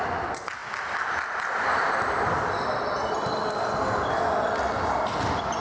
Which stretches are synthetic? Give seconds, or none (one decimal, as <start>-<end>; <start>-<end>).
none

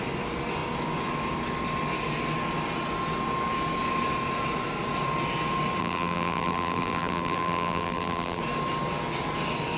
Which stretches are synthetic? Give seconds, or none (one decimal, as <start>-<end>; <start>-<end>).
5.8-8.4